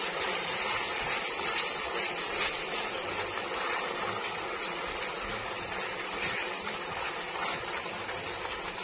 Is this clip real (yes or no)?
yes